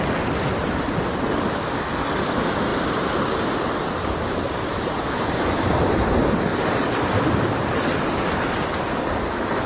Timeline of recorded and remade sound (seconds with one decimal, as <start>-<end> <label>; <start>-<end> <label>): 0.0-0.6 recorded; 0.6-1.2 remade; 1.2-2.7 recorded; 2.7-5.8 remade; 5.8-6.5 recorded; 6.5-7.8 remade; 7.8-9.7 recorded